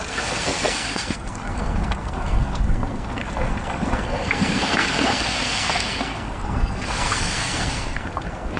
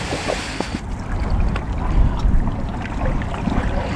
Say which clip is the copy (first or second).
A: first